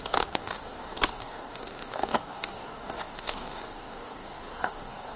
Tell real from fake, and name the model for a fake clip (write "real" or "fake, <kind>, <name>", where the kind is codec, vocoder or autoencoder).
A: fake, codec, DAC